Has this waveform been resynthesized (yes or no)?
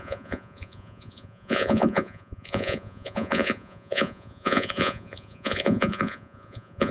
yes